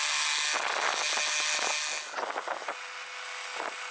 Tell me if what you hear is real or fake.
real